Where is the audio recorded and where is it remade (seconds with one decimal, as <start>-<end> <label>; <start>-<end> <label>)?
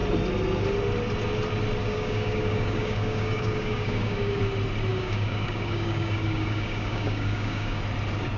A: 0.0-1.8 recorded; 1.8-4.4 remade; 4.4-4.9 recorded; 4.9-7.8 remade; 7.8-8.4 recorded